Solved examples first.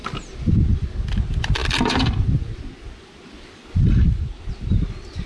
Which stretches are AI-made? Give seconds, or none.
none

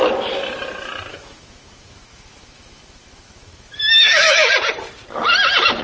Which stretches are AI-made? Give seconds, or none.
1.1-4.5 (autoencoder, DAC-VAE)

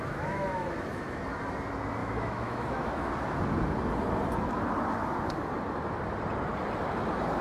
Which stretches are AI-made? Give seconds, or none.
0.0-1.2 (autoencoder, DAC-VAE); 2.0-3.1

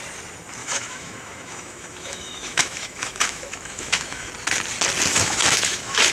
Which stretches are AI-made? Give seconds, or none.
0.6-4.3 (autoencoder, DAC-VAE); 5.1-6.1